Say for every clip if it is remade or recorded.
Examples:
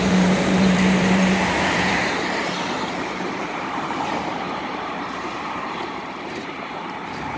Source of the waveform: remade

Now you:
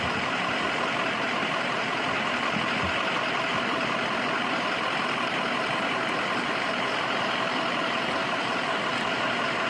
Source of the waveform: recorded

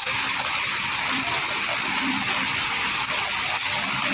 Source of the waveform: recorded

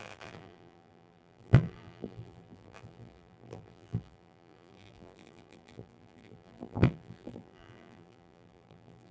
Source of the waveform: remade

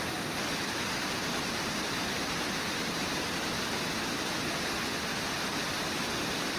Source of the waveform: recorded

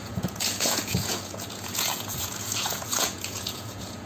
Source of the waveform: remade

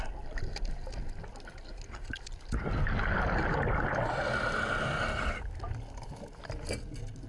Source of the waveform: recorded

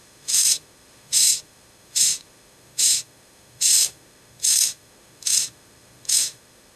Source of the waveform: remade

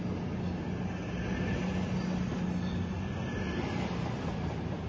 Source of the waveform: recorded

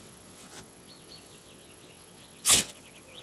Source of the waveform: remade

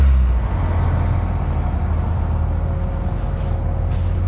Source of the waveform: recorded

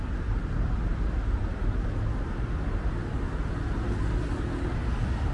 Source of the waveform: recorded